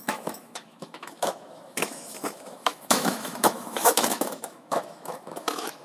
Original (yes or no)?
no